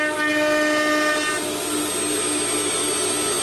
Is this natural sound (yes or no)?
yes